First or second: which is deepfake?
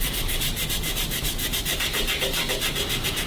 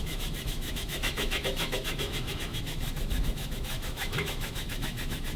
second